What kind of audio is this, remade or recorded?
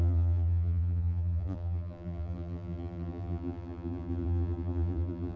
remade